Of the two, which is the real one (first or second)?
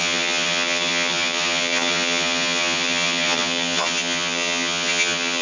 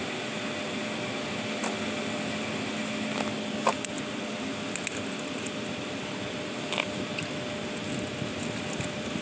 second